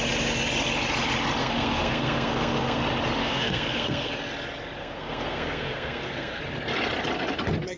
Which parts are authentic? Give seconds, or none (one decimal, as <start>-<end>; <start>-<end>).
0.0-1.4; 2.8-3.2; 4.1-4.8; 6.4-7.8